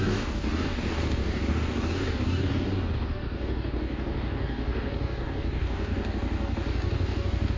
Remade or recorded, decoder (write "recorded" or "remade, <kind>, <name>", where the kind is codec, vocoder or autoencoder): remade, codec, DAC